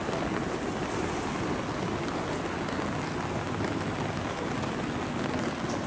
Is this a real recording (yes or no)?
yes